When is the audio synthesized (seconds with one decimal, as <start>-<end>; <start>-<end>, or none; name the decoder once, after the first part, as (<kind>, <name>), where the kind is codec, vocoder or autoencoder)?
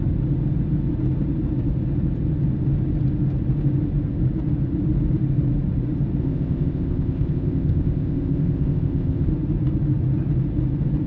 6.2-9.3 (codec, ZipCodec)